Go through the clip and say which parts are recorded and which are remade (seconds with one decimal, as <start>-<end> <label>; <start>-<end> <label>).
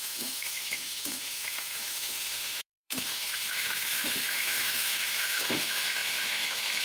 0.0-6.8 remade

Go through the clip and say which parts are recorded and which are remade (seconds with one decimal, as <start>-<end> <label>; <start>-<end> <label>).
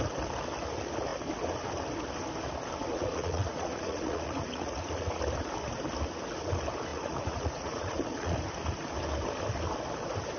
0.0-2.9 recorded; 2.9-5.2 remade; 5.2-6.9 recorded; 6.9-8.4 remade; 8.4-10.4 recorded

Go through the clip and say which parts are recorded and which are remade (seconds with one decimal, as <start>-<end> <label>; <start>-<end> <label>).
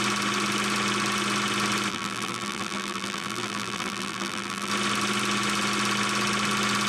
0.0-1.9 recorded; 1.9-4.7 remade; 4.7-6.9 recorded